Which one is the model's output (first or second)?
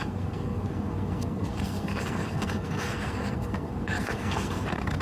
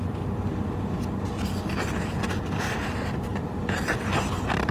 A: first